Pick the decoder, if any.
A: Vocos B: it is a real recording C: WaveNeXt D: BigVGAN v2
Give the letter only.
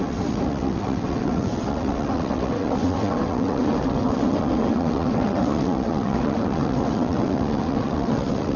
C